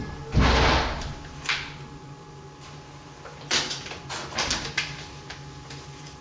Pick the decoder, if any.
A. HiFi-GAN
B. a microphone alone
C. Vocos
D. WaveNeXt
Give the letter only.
B